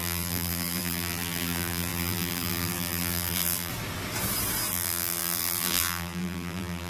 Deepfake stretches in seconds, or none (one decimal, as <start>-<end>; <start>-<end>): 0.0-3.7; 4.7-6.9

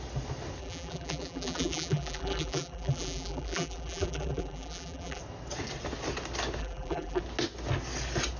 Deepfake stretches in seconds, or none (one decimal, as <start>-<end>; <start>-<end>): 0.6-5.2; 6.6-7.2

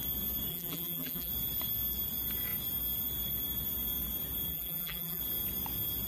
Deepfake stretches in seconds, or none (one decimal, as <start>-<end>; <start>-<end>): 0.5-1.3; 4.5-5.2